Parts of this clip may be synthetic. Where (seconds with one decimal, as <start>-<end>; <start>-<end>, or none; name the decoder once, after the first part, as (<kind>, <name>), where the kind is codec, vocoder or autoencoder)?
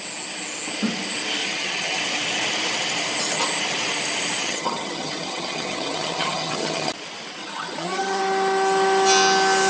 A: 1.4-2.0 (vocoder, HiFi-GAN); 4.4-6.9; 7.4-8.2